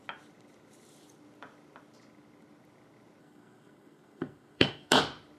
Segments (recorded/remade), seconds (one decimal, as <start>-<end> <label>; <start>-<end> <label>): 0.0-3.2 recorded; 3.2-5.0 remade; 5.0-5.4 recorded